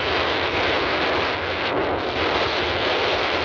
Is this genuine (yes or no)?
yes